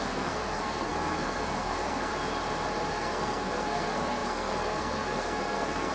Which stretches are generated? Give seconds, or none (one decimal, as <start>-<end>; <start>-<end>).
0.0-2.1; 2.9-5.9